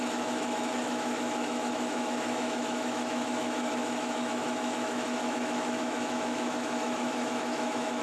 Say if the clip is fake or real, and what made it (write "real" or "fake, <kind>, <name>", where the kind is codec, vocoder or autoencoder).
fake, autoencoder, DAC-VAE